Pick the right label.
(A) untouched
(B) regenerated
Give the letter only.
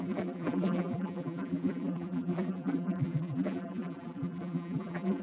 B